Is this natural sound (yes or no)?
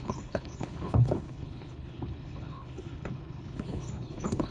no